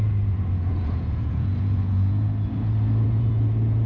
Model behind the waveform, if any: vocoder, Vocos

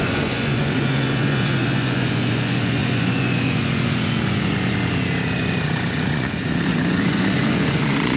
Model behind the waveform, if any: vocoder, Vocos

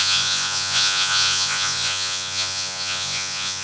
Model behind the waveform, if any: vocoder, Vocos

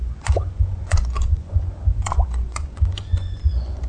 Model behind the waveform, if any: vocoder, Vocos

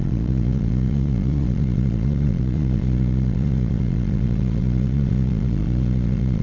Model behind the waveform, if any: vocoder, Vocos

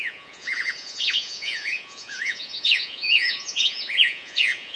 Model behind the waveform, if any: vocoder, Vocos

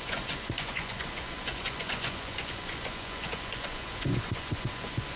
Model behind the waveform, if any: vocoder, Vocos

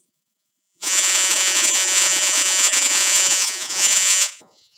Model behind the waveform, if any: vocoder, Vocos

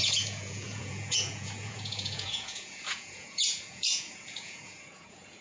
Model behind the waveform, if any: vocoder, Vocos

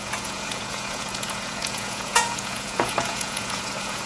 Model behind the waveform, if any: vocoder, Vocos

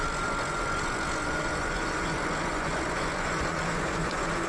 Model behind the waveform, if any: vocoder, Vocos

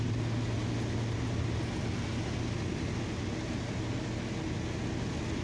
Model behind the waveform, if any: none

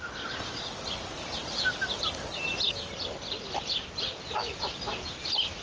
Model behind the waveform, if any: none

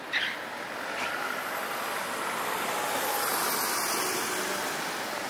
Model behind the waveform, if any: none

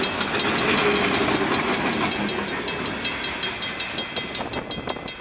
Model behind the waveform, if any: none